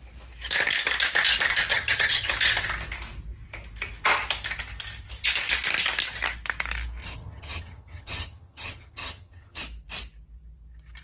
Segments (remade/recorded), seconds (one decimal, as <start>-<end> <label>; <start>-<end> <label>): 0.0-1.7 recorded; 1.7-2.3 remade; 2.3-7.0 recorded; 7.0-9.6 remade; 9.6-11.0 recorded